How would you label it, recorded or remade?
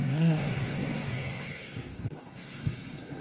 remade